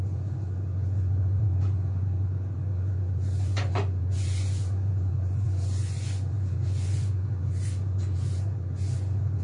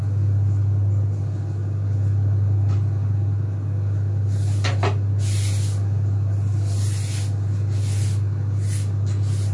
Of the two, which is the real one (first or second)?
second